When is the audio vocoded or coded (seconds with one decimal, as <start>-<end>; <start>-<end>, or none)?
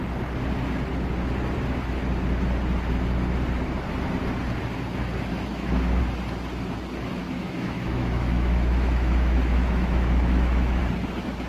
5.3-6.0; 7.2-10.8